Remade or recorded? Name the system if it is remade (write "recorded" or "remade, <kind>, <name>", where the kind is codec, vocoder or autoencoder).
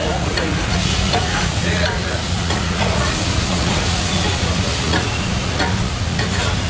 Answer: remade, vocoder, Vocos